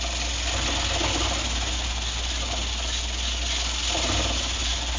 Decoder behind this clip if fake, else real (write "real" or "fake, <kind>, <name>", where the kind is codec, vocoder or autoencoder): real